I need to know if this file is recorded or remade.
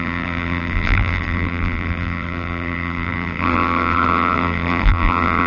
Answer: remade